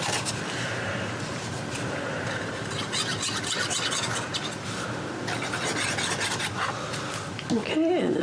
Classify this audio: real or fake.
real